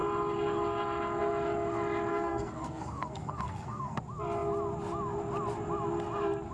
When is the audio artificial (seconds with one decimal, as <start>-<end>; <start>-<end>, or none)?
2.1-4.0